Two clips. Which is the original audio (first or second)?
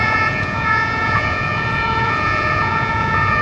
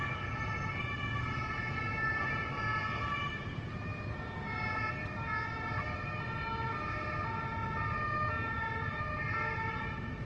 second